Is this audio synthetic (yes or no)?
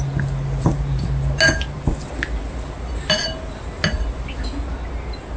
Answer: no